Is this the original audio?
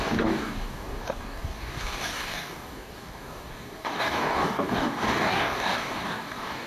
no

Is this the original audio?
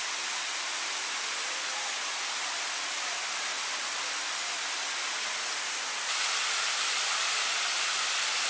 yes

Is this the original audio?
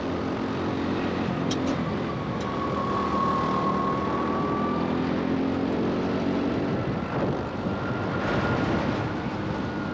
yes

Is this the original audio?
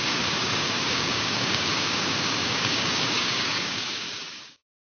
no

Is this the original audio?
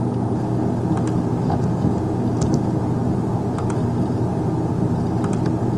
yes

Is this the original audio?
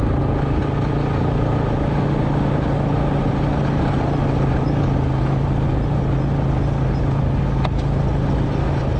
yes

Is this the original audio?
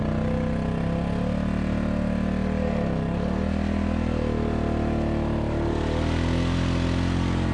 yes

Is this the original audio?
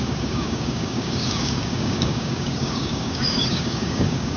no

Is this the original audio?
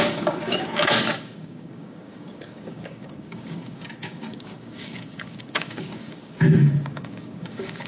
no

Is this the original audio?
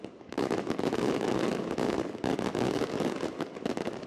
no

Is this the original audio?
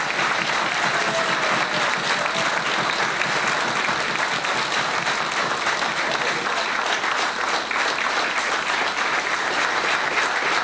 yes